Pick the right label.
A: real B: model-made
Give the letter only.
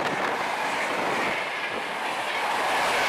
A